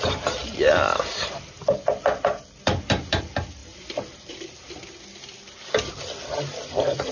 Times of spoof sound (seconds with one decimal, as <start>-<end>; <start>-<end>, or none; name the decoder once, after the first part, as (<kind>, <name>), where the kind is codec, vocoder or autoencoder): 0.0-0.9 (vocoder, BigVGAN v2); 1.9-3.6; 6.4-7.1